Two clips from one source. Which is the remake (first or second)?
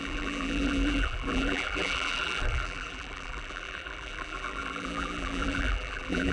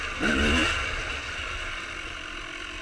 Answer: first